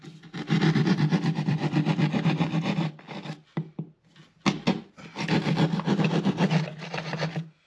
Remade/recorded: recorded